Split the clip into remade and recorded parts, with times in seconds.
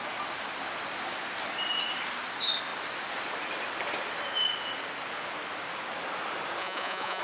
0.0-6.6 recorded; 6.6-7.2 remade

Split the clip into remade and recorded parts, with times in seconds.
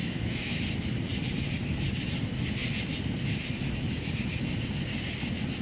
0.0-0.6 remade; 0.6-5.6 recorded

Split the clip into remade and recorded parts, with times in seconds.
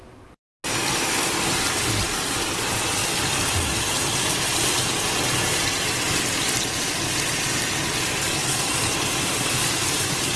0.0-10.4 recorded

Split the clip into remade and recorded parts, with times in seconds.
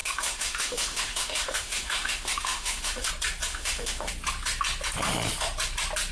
0.0-3.1 remade; 3.1-3.5 recorded; 3.5-4.1 remade; 4.1-6.1 recorded